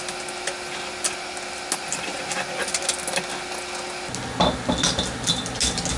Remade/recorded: recorded